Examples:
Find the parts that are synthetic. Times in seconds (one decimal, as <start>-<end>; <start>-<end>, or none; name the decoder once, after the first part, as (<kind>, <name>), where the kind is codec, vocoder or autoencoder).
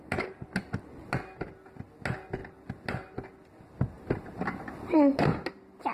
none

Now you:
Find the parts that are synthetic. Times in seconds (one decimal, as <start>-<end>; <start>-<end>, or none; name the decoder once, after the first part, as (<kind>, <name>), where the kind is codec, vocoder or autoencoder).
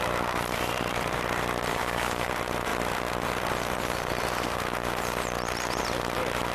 1.7-2.3 (autoencoder, DAC-VAE)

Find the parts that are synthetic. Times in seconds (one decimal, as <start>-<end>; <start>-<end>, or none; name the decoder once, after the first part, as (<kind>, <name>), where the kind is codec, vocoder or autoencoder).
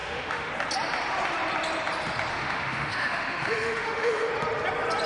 0.0-0.5 (autoencoder, DAC-VAE); 2.3-4.3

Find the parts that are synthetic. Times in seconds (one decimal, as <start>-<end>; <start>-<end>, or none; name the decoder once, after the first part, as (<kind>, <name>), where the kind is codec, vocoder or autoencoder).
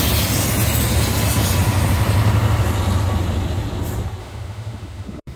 4.2-5.4 (autoencoder, DAC-VAE)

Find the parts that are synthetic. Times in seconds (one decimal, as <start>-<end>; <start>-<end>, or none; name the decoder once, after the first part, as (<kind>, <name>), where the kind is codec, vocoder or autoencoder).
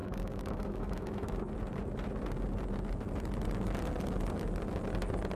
0.0-1.3 (autoencoder, DAC-VAE)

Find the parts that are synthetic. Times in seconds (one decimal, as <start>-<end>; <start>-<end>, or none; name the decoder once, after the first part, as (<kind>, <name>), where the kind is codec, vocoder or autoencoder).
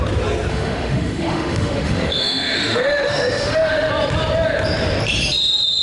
0.5-3.9 (autoencoder, DAC-VAE)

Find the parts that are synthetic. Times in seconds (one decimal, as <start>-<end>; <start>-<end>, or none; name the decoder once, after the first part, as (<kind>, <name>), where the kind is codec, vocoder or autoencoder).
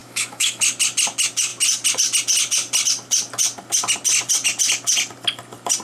0.0-0.6 (autoencoder, DAC-VAE)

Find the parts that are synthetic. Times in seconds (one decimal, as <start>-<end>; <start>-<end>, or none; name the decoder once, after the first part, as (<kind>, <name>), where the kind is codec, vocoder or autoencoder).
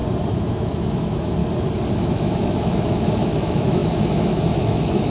0.5-1.4 (autoencoder, DAC-VAE); 1.9-5.1